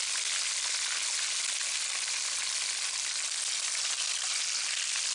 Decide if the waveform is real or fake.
real